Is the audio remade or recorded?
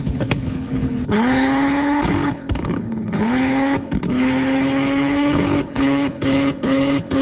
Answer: remade